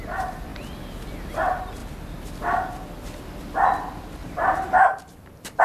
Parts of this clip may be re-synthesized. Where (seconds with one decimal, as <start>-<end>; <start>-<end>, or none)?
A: 4.2-5.6